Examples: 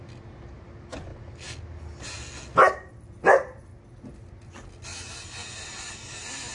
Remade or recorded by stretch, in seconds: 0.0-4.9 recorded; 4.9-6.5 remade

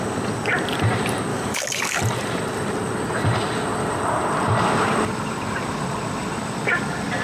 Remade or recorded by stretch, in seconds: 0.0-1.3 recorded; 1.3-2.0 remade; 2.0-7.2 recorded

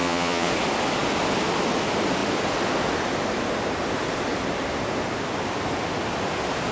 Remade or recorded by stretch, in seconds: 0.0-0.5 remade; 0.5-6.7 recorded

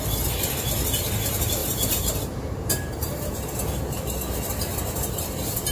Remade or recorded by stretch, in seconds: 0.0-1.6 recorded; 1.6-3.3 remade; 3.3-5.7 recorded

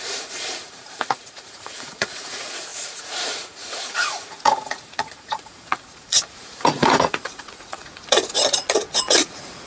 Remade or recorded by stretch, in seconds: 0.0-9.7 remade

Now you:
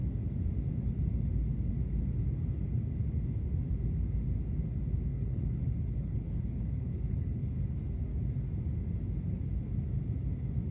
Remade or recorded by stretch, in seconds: 0.0-5.1 recorded; 5.1-7.9 remade; 7.9-10.7 recorded